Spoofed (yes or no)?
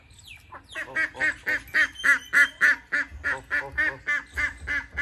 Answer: no